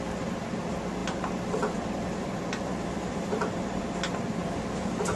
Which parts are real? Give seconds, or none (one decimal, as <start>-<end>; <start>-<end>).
0.0-1.0; 3.6-4.4